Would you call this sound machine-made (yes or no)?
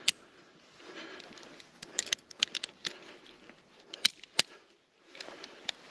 no